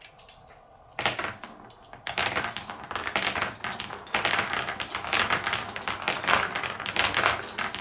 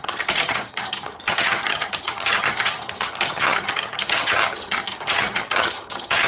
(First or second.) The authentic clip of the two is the first